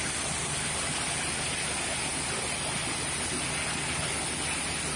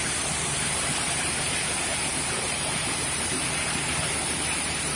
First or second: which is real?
first